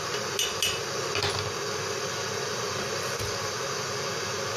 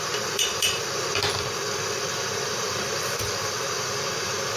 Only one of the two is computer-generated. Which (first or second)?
second